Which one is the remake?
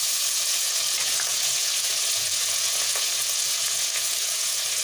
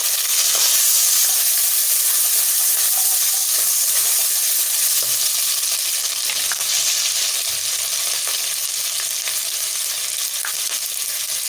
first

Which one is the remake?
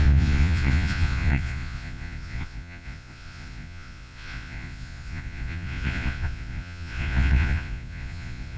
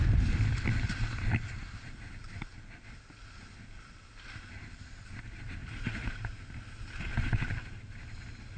first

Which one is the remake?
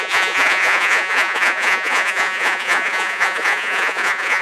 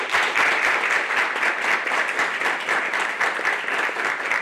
first